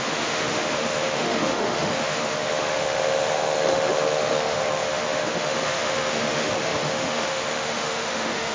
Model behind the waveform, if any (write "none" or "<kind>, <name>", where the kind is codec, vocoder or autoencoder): autoencoder, DAC-VAE